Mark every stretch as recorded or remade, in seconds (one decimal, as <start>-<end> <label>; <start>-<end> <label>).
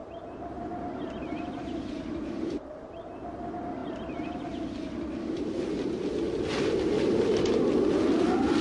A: 0.0-1.2 remade; 1.2-1.6 recorded; 1.6-2.8 remade; 2.8-8.6 recorded